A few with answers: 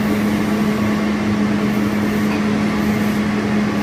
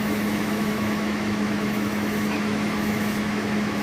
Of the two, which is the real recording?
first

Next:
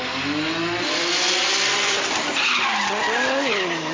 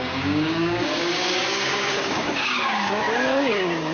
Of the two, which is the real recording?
first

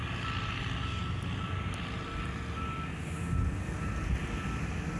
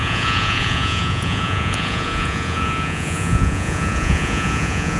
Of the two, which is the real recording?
first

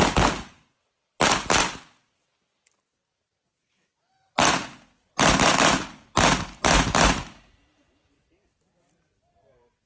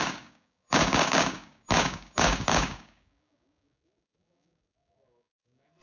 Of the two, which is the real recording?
first